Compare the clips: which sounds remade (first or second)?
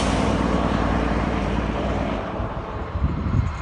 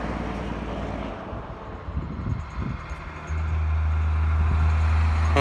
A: first